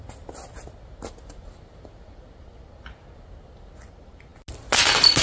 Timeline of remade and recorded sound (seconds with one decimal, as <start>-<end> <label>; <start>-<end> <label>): 0.0-5.2 recorded